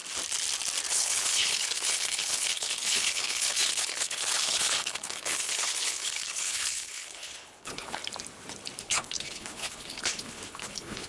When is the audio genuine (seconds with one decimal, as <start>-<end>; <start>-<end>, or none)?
0.0-0.9; 8.0-8.8